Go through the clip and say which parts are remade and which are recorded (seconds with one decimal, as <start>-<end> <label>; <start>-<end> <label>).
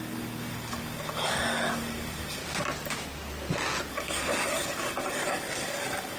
0.0-2.4 remade; 2.4-3.9 recorded; 3.9-6.2 remade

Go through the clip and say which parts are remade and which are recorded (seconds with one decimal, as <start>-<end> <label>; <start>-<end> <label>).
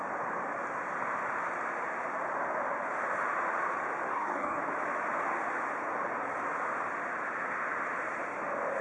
0.0-4.1 recorded; 4.1-4.6 remade; 4.6-8.8 recorded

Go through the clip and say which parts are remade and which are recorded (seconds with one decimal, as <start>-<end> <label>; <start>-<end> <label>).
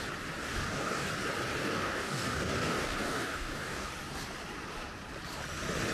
0.0-0.4 recorded; 0.4-1.1 remade; 1.1-1.6 recorded; 1.6-3.9 remade; 3.9-5.9 recorded